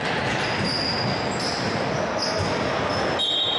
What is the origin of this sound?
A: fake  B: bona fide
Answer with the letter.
B